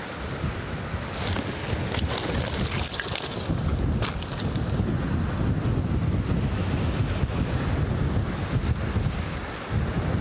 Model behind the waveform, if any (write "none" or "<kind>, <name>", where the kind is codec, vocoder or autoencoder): none